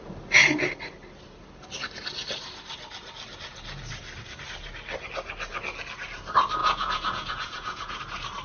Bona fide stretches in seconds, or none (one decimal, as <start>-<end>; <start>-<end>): 0.0-6.6; 8.0-8.4